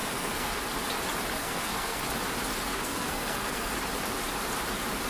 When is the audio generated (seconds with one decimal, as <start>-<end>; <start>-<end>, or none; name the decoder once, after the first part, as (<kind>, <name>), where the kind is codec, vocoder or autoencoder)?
0.0-0.6 (codec, SNAC); 1.4-2.0; 2.7-3.7